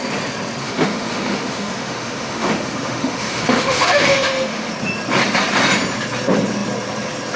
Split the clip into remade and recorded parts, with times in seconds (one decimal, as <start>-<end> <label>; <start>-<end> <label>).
0.0-0.6 recorded; 0.6-4.7 remade; 4.7-7.4 recorded